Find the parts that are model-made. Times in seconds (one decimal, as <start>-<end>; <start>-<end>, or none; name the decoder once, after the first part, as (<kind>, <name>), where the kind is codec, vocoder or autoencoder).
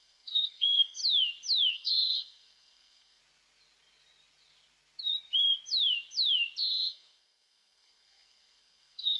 0.0-1.0 (codec, SNAC); 1.7-3.2; 6.7-9.2